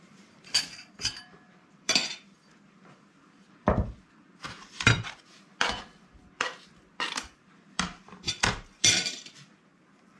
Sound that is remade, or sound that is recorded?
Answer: remade